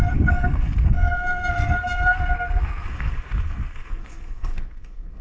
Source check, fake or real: fake